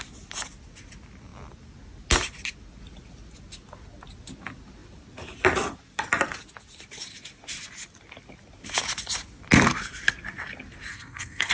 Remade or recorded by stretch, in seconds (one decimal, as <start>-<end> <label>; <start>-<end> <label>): 0.0-10.9 recorded; 10.9-11.5 remade